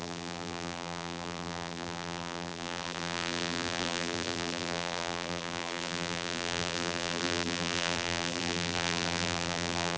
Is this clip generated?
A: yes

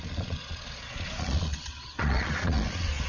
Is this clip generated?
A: yes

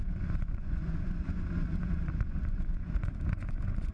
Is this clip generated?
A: yes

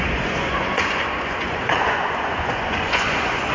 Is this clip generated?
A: yes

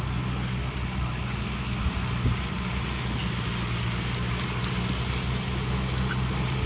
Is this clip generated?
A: no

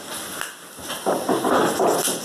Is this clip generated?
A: no